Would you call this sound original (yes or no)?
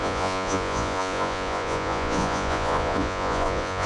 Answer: no